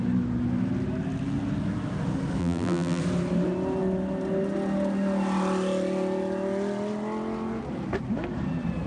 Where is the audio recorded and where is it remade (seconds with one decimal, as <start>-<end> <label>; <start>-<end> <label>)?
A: 0.0-2.4 recorded; 2.4-3.0 remade; 3.0-8.9 recorded